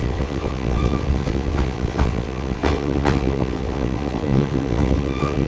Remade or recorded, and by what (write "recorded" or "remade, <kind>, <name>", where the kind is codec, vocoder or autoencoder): remade, vocoder, WaveNeXt